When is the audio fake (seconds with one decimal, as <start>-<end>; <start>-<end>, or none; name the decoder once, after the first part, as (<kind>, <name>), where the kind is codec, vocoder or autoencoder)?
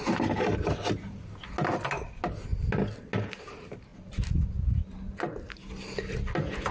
none